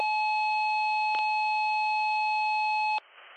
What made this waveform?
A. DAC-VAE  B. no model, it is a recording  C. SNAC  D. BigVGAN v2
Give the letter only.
B